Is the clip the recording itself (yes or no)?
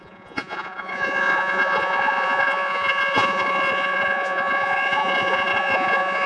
no